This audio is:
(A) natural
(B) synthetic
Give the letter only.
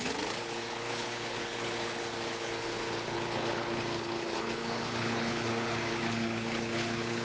B